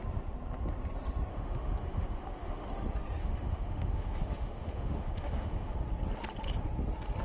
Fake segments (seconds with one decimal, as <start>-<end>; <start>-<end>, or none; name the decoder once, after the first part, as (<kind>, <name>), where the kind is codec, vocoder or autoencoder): 1.3-2.7 (autoencoder, DAC-VAE); 3.2-5.7

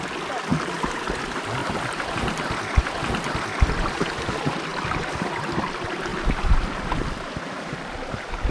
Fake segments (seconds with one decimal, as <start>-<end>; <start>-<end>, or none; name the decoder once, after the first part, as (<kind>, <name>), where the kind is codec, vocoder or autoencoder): 1.6-3.3 (vocoder, BigVGAN v2); 4.7-5.3; 6.1-7.4

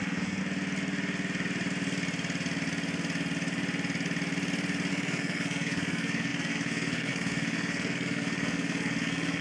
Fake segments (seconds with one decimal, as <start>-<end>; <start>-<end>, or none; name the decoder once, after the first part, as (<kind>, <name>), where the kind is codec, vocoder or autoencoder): 0.0-0.4 (codec, SNAC); 4.9-9.4